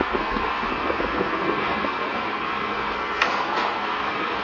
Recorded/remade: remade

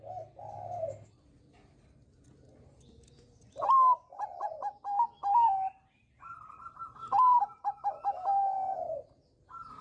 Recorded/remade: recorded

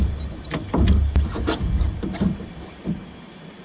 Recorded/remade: recorded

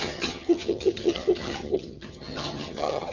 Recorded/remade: remade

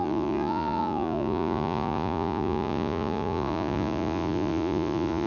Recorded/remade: remade